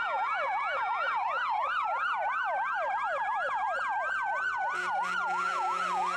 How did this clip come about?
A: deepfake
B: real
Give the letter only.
B